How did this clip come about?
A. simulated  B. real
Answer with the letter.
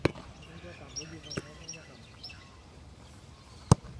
B